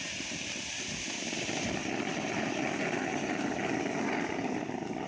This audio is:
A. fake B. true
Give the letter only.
B